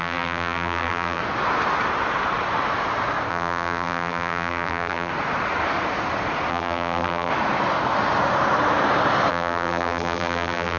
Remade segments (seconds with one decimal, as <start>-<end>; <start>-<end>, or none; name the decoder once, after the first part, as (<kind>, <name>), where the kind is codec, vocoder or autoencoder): 0.0-1.2 (vocoder, BigVGAN v2); 3.3-5.1; 6.5-7.3; 9.3-10.8